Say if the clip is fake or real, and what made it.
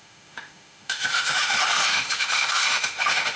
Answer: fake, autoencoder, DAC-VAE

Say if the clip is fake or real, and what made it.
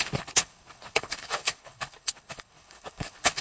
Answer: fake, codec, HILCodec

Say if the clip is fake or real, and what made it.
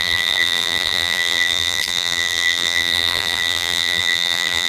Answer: fake, vocoder, BigVGAN v2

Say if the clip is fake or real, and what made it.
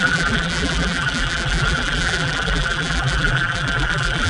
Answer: fake, vocoder, BigVGAN v2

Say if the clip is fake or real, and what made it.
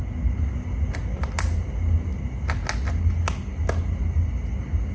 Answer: real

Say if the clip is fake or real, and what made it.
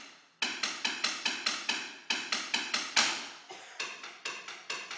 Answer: real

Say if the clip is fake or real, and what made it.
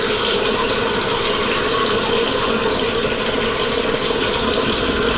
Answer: real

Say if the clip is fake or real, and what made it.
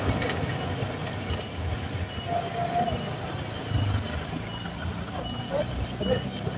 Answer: real